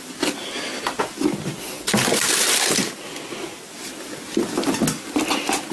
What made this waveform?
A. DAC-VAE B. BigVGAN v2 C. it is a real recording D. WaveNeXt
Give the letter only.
C